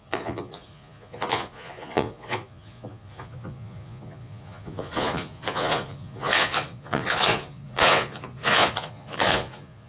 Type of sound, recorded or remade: remade